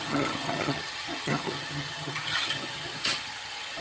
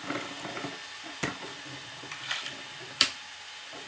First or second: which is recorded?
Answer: second